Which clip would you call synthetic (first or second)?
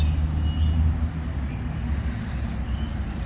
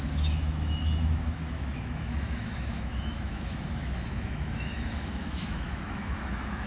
second